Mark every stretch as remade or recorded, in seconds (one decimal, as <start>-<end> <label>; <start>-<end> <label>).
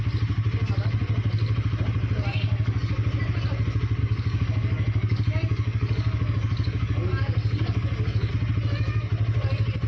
0.0-2.3 recorded; 2.3-2.9 remade; 2.9-4.0 recorded; 4.0-8.3 remade; 8.3-9.9 recorded